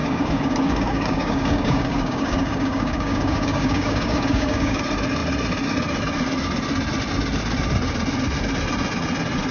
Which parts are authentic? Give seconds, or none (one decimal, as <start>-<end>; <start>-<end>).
4.8-9.5